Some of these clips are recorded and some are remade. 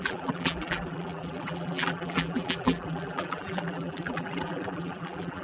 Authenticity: remade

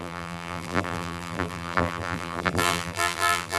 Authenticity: remade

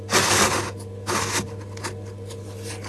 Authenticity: recorded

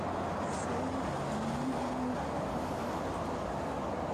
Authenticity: recorded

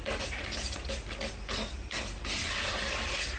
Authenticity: recorded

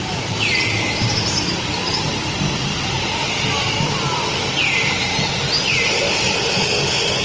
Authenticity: recorded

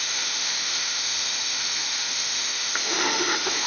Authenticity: remade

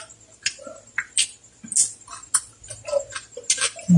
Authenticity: recorded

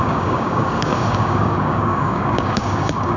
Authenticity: remade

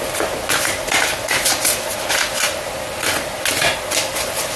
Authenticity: recorded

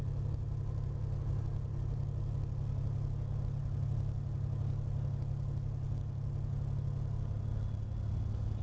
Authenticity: recorded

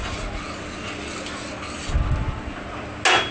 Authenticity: recorded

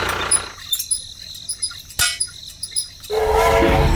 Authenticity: recorded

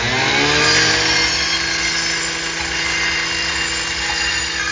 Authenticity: recorded